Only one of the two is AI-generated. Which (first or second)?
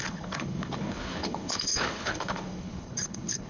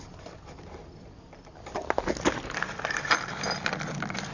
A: first